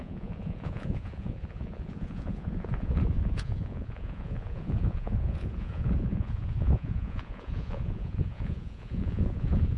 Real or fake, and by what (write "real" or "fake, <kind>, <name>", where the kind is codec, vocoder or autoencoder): fake, vocoder, Vocos